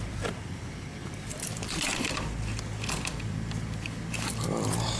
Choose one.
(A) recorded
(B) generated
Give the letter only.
B